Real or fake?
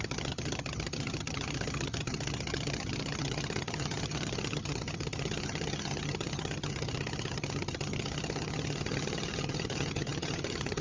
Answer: fake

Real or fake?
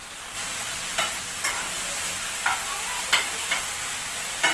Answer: real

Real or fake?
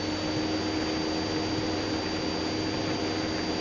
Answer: real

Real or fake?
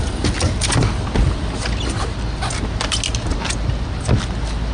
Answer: real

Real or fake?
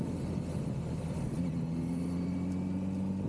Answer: real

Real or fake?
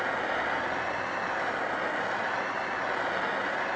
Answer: real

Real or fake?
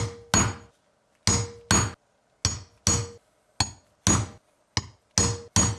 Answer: real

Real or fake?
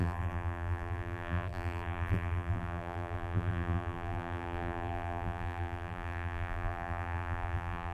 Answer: fake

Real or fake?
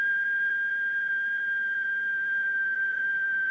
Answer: fake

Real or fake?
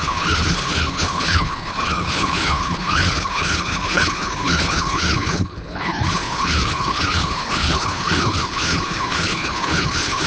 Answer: fake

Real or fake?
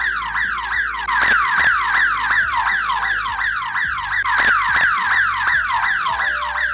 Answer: real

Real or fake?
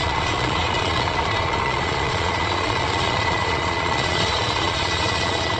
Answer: fake